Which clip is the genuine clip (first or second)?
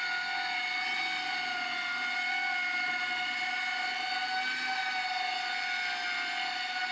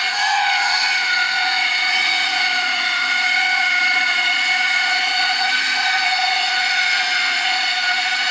first